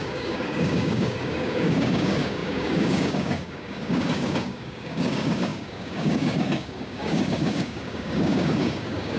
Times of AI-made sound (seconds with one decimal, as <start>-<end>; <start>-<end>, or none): 0.0-9.2